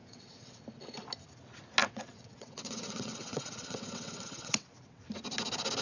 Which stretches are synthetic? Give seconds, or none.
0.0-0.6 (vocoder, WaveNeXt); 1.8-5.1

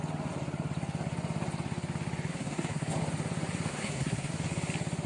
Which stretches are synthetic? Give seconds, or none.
2.3-2.9 (codec, SNAC); 3.7-4.3

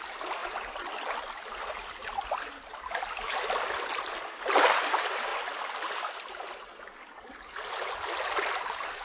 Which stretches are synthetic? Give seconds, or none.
none